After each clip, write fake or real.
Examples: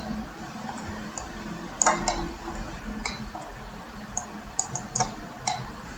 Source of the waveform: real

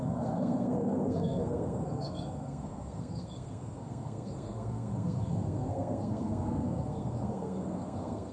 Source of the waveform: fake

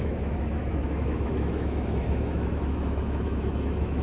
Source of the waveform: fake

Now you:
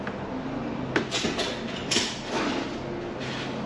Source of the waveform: real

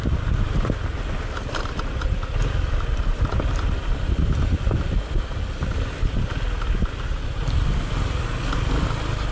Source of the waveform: real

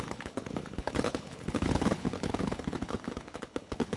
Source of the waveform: fake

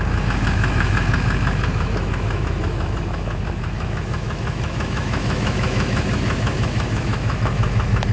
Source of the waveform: fake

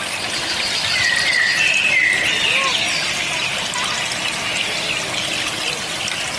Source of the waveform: real